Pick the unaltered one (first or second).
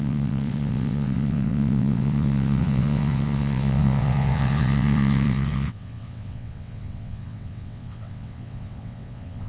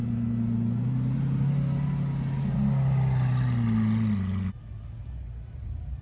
second